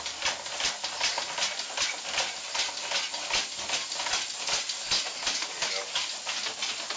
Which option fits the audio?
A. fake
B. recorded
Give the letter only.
B